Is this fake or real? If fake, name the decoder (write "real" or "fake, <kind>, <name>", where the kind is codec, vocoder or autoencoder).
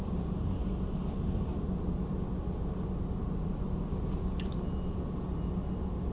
real